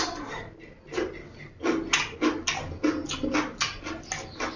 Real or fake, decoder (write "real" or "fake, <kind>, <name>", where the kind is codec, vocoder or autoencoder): real